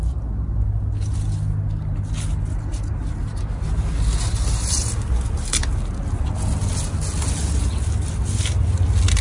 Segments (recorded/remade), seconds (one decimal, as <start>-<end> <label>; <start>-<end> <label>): 0.0-9.2 recorded